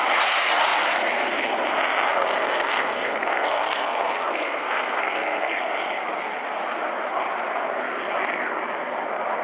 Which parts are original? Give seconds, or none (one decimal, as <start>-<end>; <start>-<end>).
0.0-2.1; 5.5-9.4